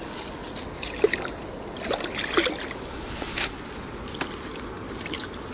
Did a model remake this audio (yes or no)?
no